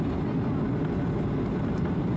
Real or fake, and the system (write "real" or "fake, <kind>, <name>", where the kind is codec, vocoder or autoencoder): real